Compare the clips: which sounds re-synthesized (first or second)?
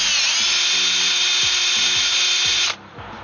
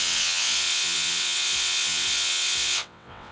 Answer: second